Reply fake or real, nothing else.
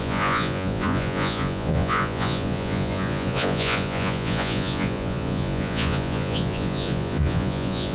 fake